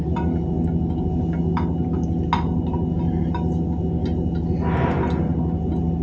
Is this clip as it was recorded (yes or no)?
yes